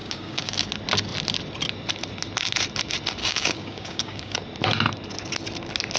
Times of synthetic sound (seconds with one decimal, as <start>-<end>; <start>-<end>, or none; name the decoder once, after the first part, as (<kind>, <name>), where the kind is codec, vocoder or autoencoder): 0.0-0.7 (codec, DAC); 3.2-4.4